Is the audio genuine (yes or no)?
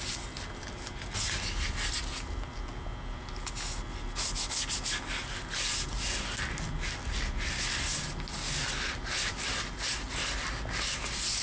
yes